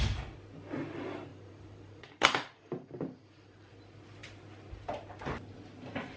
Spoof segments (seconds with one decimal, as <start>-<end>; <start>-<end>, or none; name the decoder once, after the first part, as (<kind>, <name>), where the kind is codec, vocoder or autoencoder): 1.3-3.7 (vocoder, BigVGAN v2)

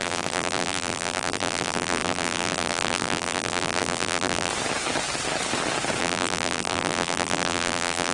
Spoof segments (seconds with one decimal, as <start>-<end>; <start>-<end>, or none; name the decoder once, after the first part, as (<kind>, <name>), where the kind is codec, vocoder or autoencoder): 0.0-4.5 (vocoder, BigVGAN v2); 6.0-8.1